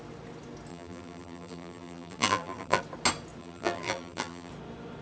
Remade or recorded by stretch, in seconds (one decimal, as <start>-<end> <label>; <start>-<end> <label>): 0.0-0.7 recorded; 0.7-2.8 remade; 2.8-3.4 recorded; 3.4-4.5 remade; 4.5-5.0 recorded